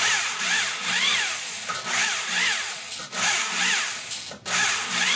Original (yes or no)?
yes